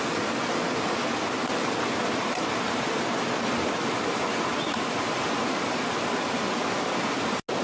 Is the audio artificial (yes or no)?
no